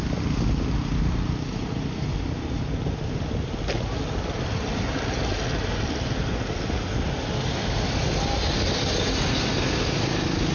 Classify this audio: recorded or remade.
recorded